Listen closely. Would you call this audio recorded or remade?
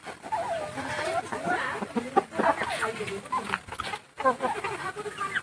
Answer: recorded